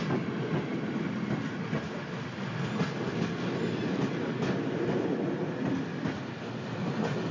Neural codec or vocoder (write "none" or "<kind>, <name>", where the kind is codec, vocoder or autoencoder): none